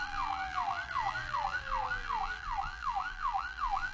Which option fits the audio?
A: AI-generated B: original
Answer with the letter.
A